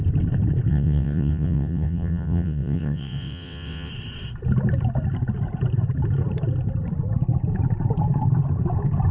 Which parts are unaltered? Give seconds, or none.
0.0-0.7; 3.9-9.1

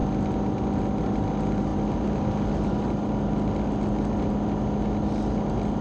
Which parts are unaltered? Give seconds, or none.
0.0-5.8

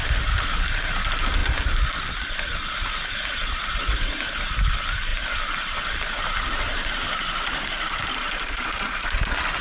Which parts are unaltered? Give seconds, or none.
0.0-9.6